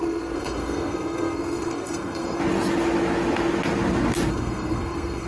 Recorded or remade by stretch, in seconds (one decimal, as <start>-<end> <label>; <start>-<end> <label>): 0.0-2.4 remade; 2.4-4.3 recorded; 4.3-5.3 remade